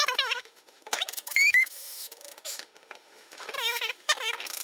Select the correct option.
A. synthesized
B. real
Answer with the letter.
A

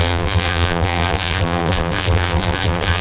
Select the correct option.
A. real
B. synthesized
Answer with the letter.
B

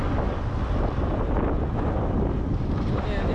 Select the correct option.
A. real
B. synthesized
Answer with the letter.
A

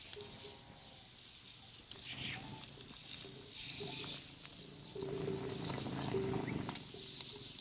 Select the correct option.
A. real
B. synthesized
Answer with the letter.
A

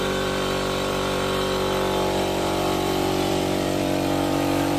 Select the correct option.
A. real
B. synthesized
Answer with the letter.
B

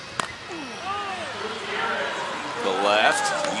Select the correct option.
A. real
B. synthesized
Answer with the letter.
A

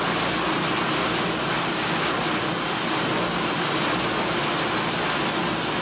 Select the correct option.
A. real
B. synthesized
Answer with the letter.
A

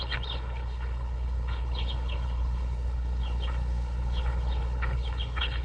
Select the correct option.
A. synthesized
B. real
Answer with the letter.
A